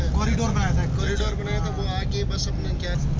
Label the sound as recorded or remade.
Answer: recorded